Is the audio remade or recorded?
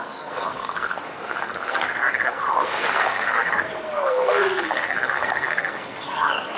remade